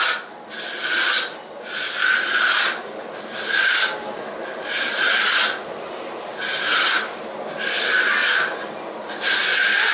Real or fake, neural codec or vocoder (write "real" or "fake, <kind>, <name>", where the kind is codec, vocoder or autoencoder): real